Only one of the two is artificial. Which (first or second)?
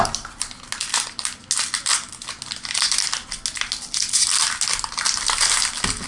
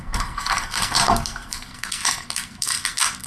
second